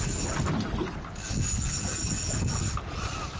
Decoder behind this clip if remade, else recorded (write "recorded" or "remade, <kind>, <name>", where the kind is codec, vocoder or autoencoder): recorded